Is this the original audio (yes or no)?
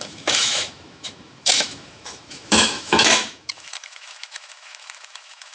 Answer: no